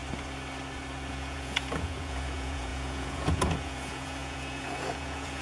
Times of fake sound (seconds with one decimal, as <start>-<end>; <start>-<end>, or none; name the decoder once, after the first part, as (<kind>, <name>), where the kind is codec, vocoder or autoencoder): 1.1-5.4 (vocoder, Vocos)